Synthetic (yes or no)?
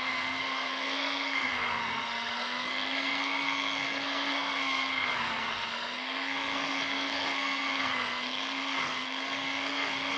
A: yes